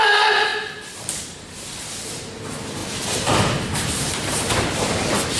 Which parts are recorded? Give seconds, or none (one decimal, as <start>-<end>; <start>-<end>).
0.0-2.8; 4.5-5.4